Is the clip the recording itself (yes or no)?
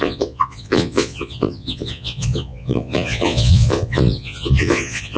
no